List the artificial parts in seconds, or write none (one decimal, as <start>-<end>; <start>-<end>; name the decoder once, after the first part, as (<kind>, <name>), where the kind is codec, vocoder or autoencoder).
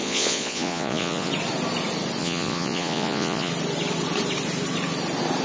0.0-1.3 (vocoder, Vocos); 2.2-3.5